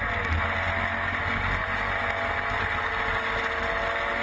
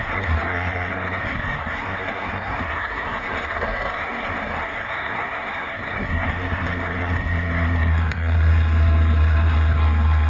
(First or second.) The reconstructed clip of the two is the second